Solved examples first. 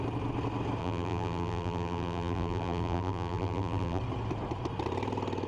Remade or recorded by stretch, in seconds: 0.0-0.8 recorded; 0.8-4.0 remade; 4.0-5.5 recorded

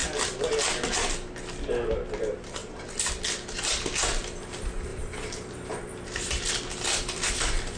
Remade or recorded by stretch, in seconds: 0.0-2.6 recorded; 2.6-3.2 remade; 3.2-4.9 recorded; 4.9-6.5 remade; 6.5-7.8 recorded

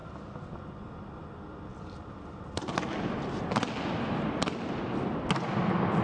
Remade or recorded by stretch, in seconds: 0.0-1.2 remade; 1.2-1.7 recorded; 1.7-3.5 remade; 3.5-6.0 recorded

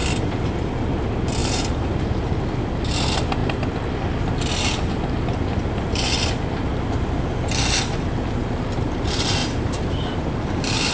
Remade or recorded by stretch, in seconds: 0.0-1.4 recorded; 1.4-1.9 remade; 1.9-9.4 recorded; 9.4-10.0 remade; 10.0-10.9 recorded

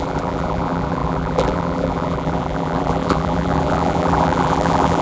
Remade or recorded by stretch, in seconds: 0.0-5.0 remade